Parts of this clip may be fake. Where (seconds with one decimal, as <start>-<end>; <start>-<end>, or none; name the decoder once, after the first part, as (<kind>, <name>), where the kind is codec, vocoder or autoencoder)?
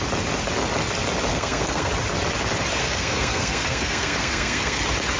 1.3-1.9 (codec, SNAC); 2.8-4.8